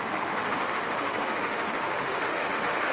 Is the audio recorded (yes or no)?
no